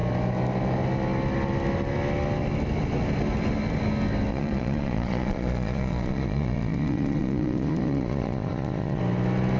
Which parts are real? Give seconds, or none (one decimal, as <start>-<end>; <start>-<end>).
0.0-4.3; 9.0-9.6